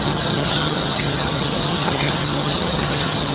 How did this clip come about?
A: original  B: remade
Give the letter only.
B